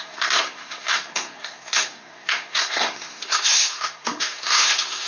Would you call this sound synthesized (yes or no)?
yes